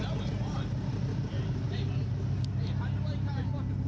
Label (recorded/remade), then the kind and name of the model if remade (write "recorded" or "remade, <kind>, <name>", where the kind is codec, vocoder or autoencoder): recorded